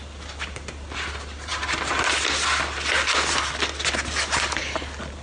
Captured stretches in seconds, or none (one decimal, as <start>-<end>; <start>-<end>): 0.0-5.2

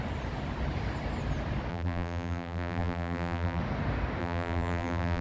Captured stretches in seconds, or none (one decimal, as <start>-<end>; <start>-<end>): 0.0-1.7; 3.6-4.2

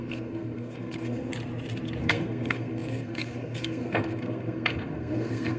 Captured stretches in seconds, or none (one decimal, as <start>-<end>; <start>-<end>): 1.3-2.0

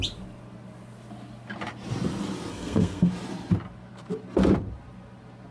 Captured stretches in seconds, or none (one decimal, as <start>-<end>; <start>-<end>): 0.0-2.5; 3.1-5.5